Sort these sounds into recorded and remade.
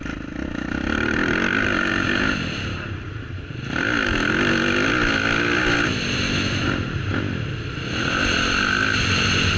recorded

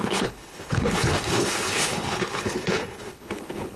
remade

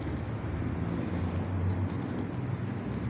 recorded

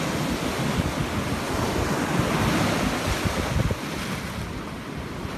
recorded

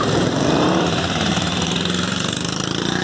remade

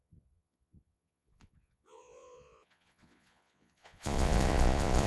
remade